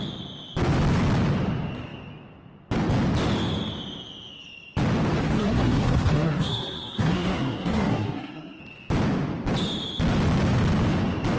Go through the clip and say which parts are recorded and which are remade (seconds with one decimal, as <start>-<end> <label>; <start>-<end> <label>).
0.0-5.2 recorded; 5.2-8.6 remade; 8.6-11.4 recorded